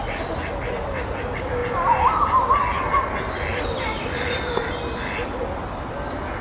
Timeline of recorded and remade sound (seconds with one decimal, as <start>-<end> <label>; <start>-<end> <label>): 0.0-6.4 recorded